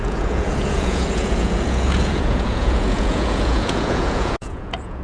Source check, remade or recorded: remade